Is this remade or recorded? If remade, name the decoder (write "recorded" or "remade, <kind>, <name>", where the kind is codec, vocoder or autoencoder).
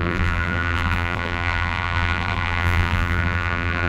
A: remade, vocoder, BigVGAN v2